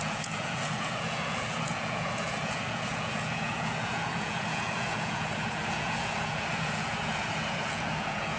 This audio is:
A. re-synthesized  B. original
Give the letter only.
A